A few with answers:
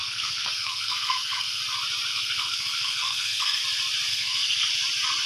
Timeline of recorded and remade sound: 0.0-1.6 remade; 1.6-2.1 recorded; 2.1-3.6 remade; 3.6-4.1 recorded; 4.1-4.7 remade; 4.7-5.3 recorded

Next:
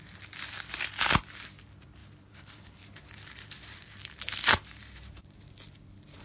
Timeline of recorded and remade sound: 0.0-2.0 recorded; 2.0-5.4 remade; 5.4-6.2 recorded

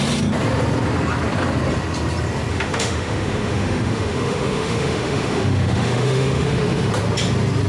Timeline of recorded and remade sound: 0.0-2.5 recorded; 2.5-6.9 remade; 6.9-7.7 recorded

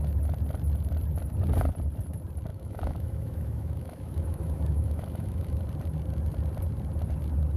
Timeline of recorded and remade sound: 0.0-2.5 recorded; 2.5-5.6 remade; 5.6-7.6 recorded

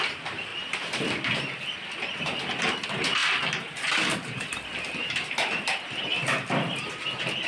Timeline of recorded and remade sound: 0.0-7.5 recorded